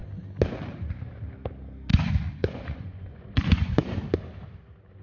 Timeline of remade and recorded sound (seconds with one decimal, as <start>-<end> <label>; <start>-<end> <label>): 0.0-1.9 recorded; 1.9-4.0 remade; 4.0-5.0 recorded